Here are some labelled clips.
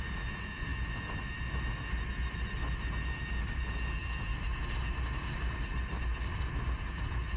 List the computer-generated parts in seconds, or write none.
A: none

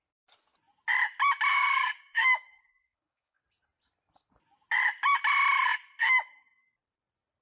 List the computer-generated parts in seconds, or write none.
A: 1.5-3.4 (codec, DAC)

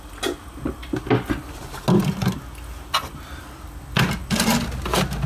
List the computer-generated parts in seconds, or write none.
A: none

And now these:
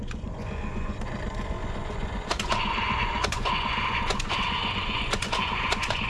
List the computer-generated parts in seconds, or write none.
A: 0.0-6.1 (vocoder, Vocos)